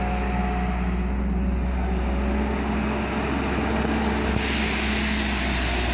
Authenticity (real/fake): real